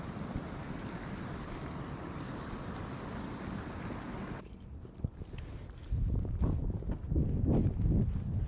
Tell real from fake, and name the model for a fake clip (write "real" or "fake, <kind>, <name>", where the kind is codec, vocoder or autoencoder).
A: real